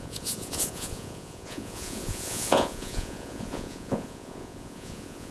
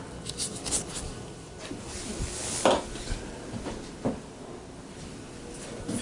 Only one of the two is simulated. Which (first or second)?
first